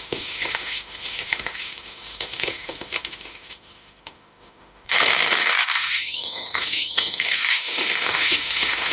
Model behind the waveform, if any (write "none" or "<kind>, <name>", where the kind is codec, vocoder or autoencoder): autoencoder, DAC-VAE